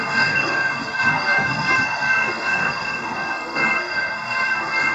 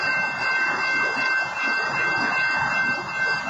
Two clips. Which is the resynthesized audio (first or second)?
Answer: first